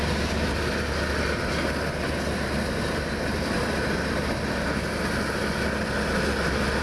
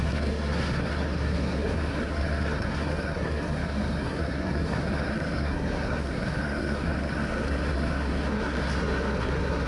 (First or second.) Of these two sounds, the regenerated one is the second